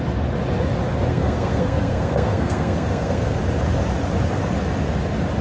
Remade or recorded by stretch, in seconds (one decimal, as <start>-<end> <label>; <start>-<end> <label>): 0.0-1.1 recorded; 1.1-3.4 remade; 3.4-5.4 recorded